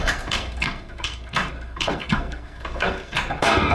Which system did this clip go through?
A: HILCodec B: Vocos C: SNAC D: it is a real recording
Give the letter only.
C